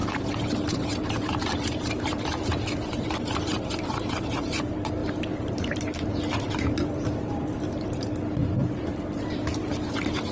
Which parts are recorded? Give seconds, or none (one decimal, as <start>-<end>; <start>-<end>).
4.6-5.0; 6.4-8.4; 9.2-10.3